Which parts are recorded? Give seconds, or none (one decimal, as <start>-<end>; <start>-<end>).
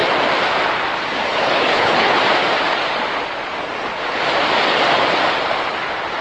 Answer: 0.0-1.3; 2.2-6.2